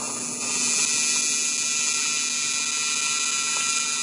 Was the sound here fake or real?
real